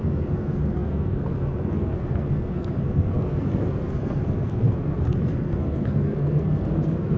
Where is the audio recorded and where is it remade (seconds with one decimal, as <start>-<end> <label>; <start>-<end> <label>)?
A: 0.0-7.2 remade